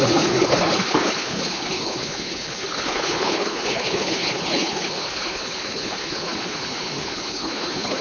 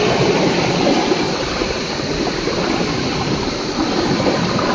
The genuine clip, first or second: second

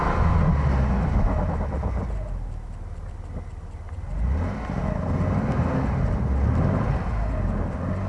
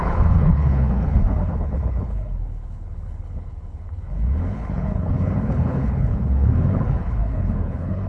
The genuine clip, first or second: first